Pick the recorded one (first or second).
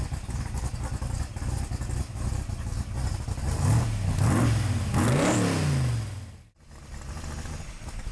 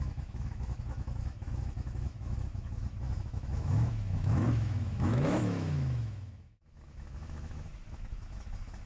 first